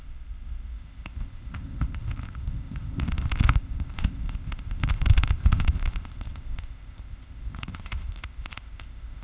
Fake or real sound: fake